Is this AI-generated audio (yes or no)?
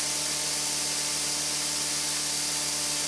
no